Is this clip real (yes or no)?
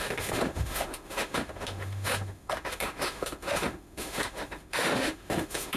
no